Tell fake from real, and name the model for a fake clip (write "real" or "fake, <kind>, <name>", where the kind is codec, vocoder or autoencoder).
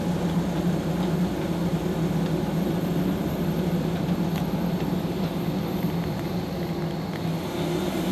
real